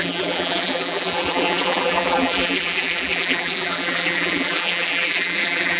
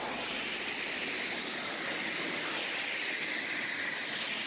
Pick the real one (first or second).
second